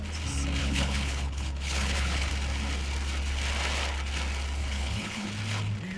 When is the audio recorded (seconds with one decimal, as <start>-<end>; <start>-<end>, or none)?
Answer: 0.0-0.6; 2.3-4.6; 5.3-6.0